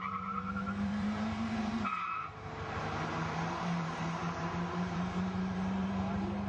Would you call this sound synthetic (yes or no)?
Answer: yes